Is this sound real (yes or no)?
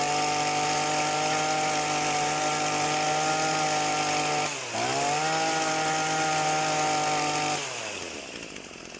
yes